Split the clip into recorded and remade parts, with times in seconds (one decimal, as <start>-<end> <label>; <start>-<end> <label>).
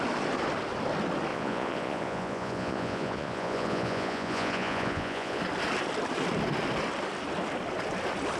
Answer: 0.0-1.3 recorded; 1.3-5.4 remade; 5.4-8.4 recorded